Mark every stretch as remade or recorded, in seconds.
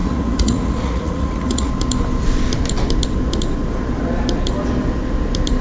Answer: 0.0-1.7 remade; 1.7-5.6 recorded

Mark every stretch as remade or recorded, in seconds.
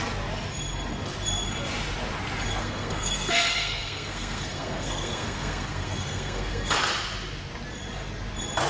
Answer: 0.0-2.5 recorded; 2.5-6.7 remade; 6.7-8.7 recorded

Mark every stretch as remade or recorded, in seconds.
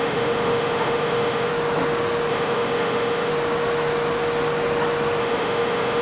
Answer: 0.0-1.5 remade; 1.5-2.3 recorded; 2.3-3.3 remade; 3.3-5.2 recorded; 5.2-6.0 remade